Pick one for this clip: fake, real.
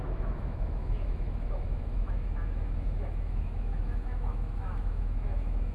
fake